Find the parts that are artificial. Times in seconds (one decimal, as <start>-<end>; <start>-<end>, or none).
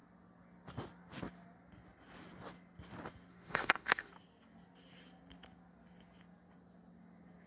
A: 3.3-4.1